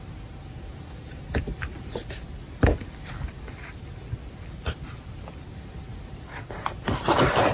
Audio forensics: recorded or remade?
recorded